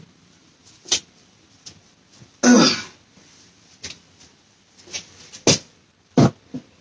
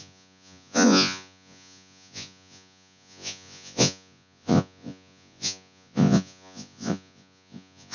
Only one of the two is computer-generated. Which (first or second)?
second